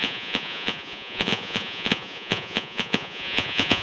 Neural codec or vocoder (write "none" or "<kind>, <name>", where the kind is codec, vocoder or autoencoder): vocoder, Vocos